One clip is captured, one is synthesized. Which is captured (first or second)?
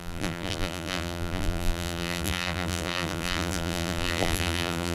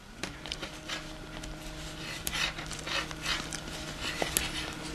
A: second